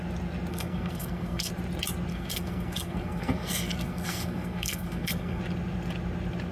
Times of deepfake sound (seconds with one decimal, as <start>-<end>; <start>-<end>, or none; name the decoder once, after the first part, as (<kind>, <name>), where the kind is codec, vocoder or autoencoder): 0.5-1.5 (codec, SNAC); 2.1-5.4